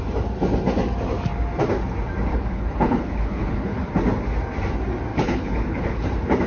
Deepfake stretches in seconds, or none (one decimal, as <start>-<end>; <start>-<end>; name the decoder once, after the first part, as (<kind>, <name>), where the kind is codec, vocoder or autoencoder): 2.3-3.9 (codec, HILCodec); 5.1-6.1